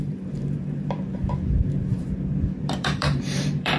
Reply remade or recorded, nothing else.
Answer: remade